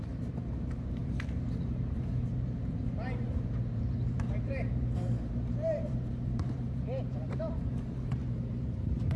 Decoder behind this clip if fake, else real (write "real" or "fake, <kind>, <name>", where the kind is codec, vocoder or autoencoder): fake, vocoder, BigVGAN v2